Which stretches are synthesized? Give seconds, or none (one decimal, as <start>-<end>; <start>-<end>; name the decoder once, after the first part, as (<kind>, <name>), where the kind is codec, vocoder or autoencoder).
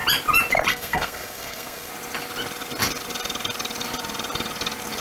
0.7-1.9 (codec, SNAC)